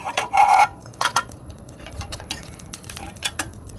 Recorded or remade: remade